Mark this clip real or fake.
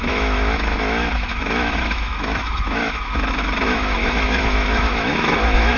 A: fake